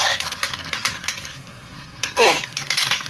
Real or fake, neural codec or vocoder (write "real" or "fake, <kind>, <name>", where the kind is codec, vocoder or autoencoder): fake, codec, SNAC